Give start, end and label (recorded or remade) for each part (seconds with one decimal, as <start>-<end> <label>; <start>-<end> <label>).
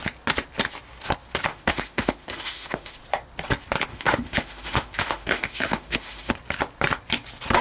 0.0-1.5 recorded; 1.5-3.0 remade; 3.0-3.9 recorded; 3.9-6.3 remade; 6.3-7.6 recorded